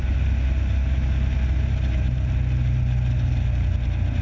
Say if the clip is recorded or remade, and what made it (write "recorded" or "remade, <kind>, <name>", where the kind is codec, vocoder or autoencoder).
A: recorded